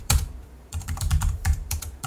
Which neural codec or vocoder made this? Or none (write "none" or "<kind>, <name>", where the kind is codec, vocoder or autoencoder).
vocoder, BigVGAN v2